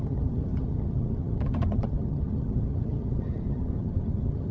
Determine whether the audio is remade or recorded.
remade